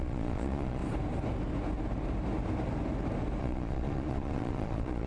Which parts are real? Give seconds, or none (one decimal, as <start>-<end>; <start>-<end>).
0.8-3.4